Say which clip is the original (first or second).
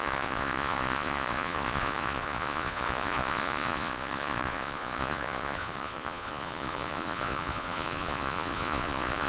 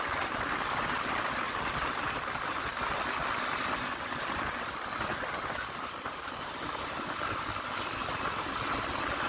second